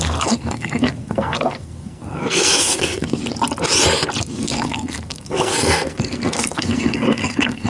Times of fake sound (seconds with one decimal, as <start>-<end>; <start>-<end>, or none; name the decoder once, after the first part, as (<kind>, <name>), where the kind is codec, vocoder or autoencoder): 0.0-3.2 (codec, SNAC); 4.2-7.7